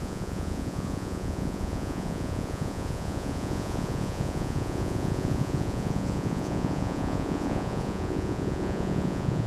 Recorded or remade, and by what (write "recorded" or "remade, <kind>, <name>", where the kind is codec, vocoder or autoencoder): remade, vocoder, Vocos